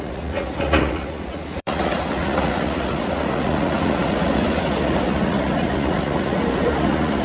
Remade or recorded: remade